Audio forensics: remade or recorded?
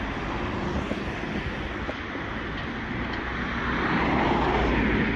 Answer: recorded